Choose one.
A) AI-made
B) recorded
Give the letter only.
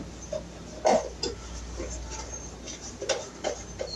B